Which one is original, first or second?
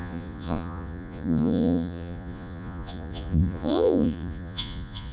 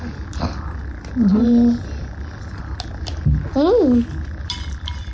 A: second